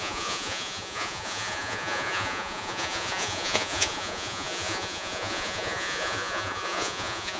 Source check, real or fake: fake